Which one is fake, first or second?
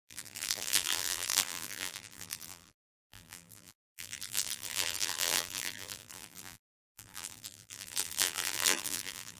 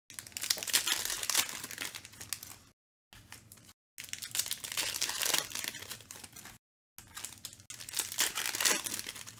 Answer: first